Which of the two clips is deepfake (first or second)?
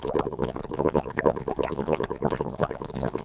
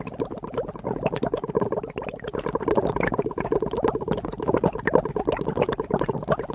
first